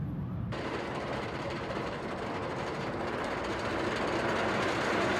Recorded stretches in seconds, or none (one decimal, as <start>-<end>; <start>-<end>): 2.0-2.4; 3.3-5.2